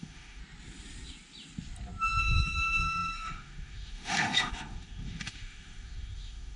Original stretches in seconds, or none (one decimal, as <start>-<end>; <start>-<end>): 0.4-2.2